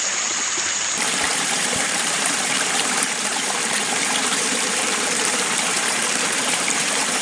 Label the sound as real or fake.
fake